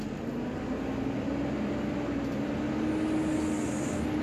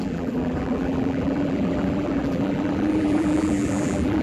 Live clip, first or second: first